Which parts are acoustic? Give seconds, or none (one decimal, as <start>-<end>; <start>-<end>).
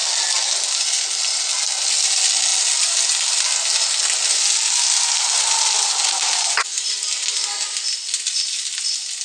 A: 0.0-9.2